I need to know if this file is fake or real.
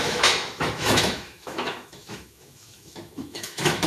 fake